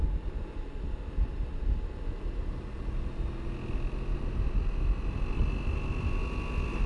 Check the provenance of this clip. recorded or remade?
recorded